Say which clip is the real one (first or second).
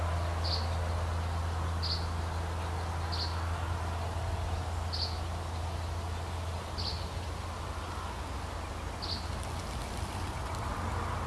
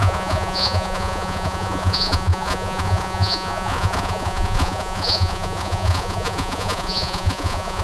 first